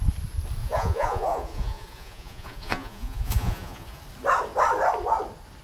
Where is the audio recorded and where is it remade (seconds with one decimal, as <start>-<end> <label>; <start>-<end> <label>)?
0.0-0.6 recorded; 0.6-4.0 remade; 4.0-5.6 recorded